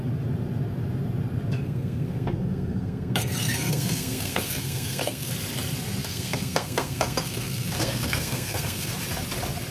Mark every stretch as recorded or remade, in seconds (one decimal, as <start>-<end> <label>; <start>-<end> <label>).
0.0-1.5 recorded; 1.5-5.3 remade; 5.3-6.0 recorded; 6.0-8.9 remade; 8.9-9.7 recorded